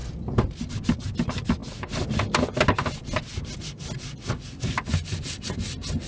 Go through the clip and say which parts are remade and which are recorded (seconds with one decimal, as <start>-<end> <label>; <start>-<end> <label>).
0.0-6.1 recorded